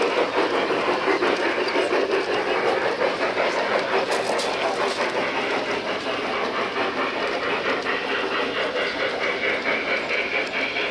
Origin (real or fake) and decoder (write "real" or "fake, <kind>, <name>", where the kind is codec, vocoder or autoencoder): real